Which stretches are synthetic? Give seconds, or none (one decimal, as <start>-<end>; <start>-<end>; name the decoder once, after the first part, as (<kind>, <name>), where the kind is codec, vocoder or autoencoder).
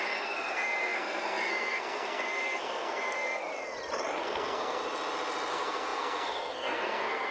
0.0-3.5 (codec, SNAC); 4.2-4.8; 5.5-7.3